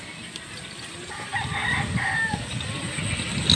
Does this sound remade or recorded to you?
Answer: recorded